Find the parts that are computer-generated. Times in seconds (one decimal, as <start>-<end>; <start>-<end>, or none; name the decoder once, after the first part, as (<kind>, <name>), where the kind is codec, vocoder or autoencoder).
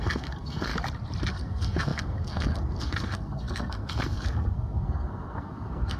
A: 0.0-0.7 (codec, SNAC); 1.3-6.0